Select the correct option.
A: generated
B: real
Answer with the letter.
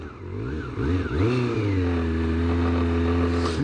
B